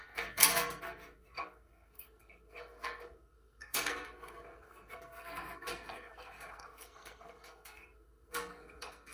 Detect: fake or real fake